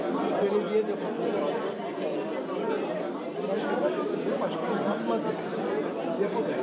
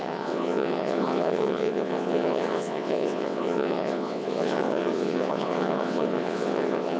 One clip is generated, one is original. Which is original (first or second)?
first